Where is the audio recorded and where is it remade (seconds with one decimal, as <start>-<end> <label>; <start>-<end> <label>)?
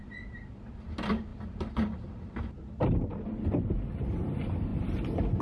0.0-5.4 recorded